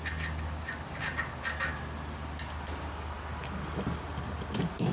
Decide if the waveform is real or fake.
real